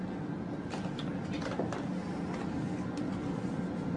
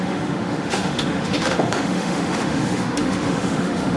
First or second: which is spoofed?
second